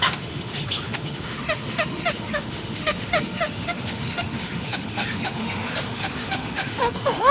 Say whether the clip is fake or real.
fake